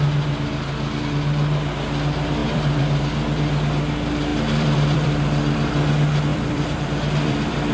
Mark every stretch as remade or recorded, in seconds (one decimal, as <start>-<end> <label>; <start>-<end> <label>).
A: 0.0-2.4 recorded; 2.4-3.0 remade; 3.0-4.3 recorded; 4.3-5.7 remade; 5.7-6.3 recorded; 6.3-7.7 remade